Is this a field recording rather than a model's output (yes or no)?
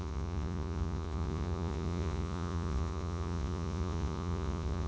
no